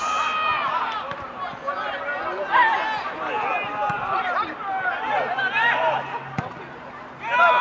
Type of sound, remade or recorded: recorded